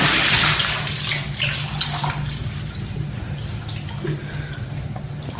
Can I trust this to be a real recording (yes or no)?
yes